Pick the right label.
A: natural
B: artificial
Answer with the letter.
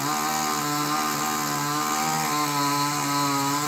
A